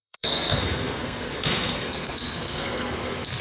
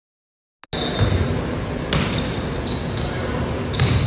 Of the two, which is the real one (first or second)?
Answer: second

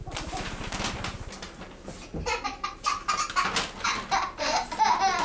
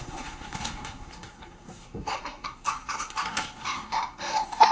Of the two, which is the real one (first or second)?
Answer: first